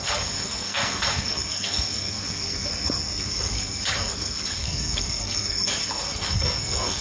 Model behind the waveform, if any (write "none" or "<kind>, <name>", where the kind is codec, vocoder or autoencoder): codec, SNAC